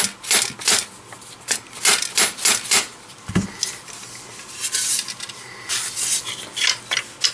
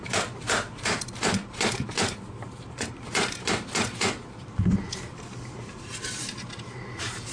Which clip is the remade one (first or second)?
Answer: second